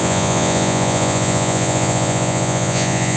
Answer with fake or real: fake